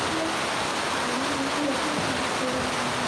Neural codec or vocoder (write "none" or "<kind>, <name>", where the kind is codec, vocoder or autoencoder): none